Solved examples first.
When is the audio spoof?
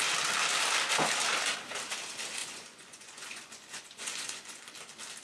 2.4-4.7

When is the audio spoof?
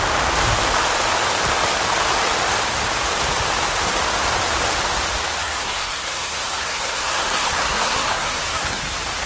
5.4-8.8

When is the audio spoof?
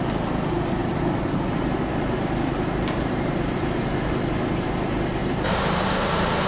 0.8-4.1; 5.2-6.5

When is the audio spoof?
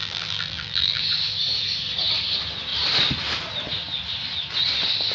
0.0-1.0